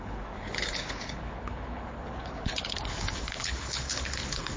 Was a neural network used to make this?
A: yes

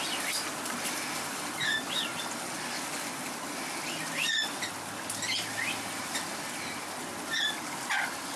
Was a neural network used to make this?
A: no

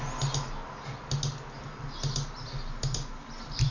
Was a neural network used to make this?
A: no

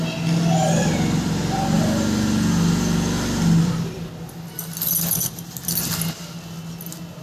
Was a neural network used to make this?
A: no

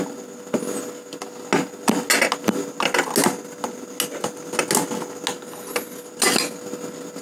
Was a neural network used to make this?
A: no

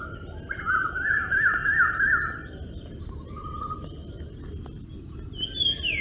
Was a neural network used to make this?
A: no